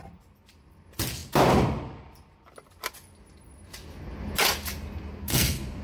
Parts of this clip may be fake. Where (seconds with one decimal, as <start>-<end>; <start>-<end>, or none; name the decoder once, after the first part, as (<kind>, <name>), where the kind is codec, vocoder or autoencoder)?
5.2-5.8 (codec, SNAC)

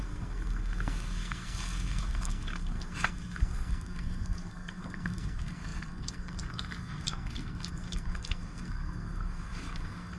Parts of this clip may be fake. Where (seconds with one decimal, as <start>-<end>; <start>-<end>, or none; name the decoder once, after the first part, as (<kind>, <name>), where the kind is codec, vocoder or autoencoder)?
0.0-10.2 (codec, SNAC)